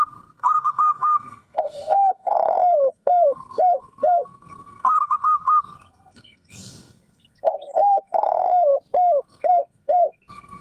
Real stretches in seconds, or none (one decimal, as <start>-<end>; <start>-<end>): 8.7-9.2